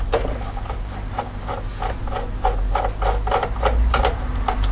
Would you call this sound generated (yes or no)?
no